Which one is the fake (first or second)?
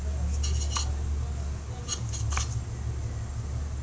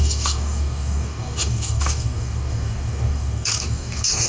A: second